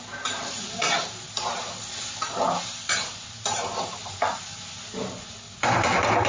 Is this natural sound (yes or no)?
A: yes